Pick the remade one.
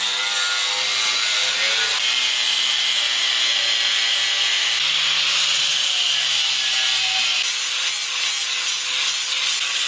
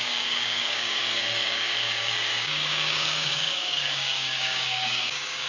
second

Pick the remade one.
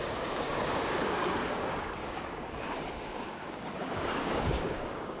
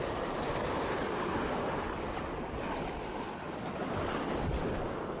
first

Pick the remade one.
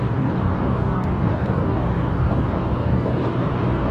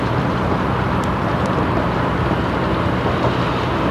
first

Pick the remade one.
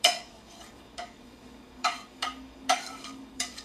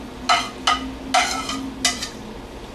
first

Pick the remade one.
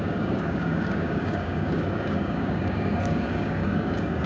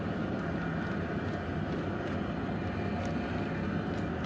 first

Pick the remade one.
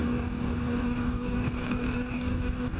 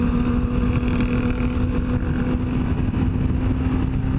first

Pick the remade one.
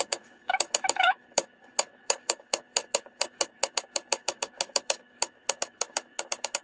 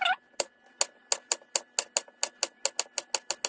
first